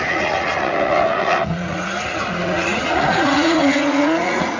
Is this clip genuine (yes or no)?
no